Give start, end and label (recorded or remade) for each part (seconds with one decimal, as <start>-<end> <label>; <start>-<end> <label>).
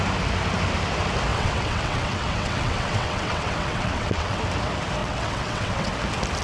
0.0-1.3 recorded; 1.3-4.4 remade; 4.4-5.0 recorded; 5.0-5.9 remade; 5.9-6.4 recorded